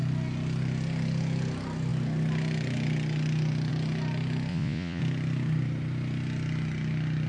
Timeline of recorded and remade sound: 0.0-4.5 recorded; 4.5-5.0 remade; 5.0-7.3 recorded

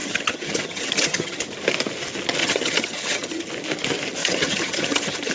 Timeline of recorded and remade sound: 0.0-1.4 remade; 1.4-2.4 recorded; 2.4-3.5 remade; 3.5-4.2 recorded; 4.2-5.3 remade

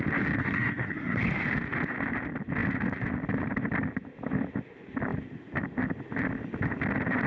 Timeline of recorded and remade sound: 0.0-0.4 recorded; 0.4-1.2 remade; 1.2-7.3 recorded

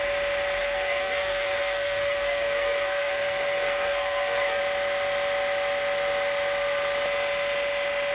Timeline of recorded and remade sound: 0.0-0.6 recorded; 0.6-4.6 remade; 4.6-8.1 recorded

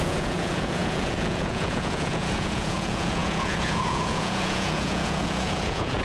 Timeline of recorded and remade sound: 0.0-6.0 remade